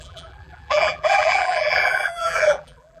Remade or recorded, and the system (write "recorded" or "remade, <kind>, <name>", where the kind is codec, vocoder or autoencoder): remade, vocoder, BigVGAN v2